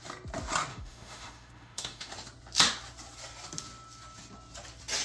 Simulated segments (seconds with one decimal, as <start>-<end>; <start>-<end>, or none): 0.7-2.1